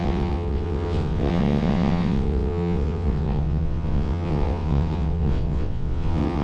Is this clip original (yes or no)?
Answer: no